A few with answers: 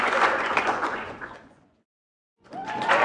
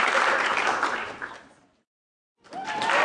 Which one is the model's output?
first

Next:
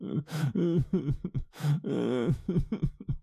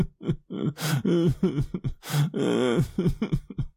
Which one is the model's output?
first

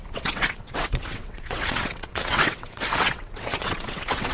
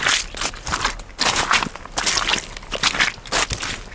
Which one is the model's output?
first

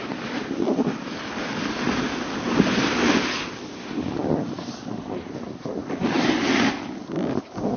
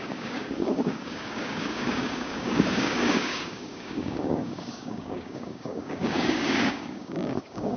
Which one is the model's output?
second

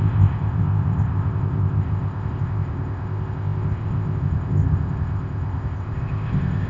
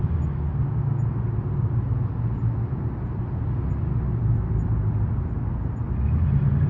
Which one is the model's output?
first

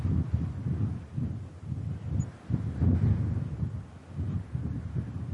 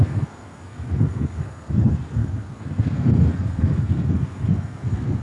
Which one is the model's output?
second